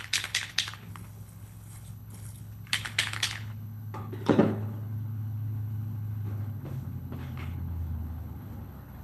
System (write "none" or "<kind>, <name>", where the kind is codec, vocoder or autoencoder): codec, HILCodec